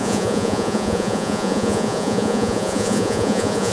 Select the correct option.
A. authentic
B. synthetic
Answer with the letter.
B